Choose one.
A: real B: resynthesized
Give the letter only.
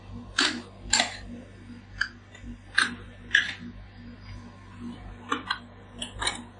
A